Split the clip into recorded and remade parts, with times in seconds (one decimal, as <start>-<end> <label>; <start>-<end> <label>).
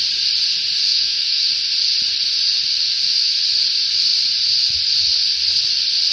0.0-0.9 recorded; 0.9-1.5 remade; 1.5-2.7 recorded; 2.7-3.3 remade; 3.3-6.1 recorded